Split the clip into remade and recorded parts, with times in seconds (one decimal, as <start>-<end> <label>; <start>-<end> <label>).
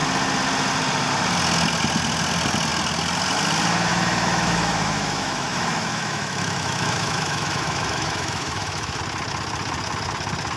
0.0-3.9 recorded; 3.9-9.0 remade; 9.0-10.6 recorded